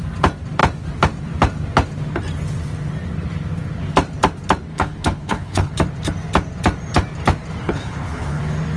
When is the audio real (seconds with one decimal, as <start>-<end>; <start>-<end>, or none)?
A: 0.0-4.7; 5.7-7.6; 8.4-8.8